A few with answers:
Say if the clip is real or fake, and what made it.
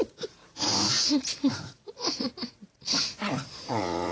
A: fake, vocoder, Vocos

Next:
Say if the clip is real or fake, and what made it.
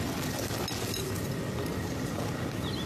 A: real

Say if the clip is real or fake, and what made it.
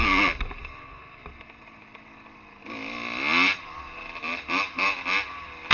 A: real